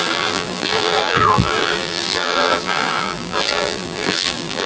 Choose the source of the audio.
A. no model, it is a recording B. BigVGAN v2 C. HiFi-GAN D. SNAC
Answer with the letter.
B